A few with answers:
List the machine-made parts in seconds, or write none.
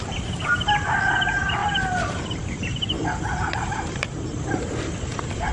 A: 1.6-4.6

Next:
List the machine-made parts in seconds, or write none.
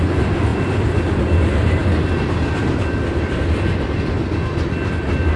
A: none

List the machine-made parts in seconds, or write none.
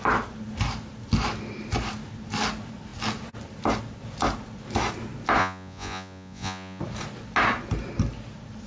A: 5.4-6.8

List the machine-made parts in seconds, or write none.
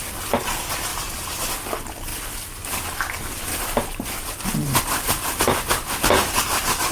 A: 0.9-1.5; 2.1-2.7; 3.5-6.9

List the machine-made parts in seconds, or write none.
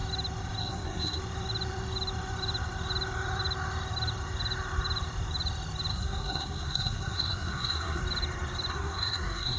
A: 0.6-1.2; 5.9-8.0; 8.7-9.6